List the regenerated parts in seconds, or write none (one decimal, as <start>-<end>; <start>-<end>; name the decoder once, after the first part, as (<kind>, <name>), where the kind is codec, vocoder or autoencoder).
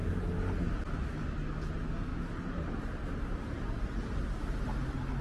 none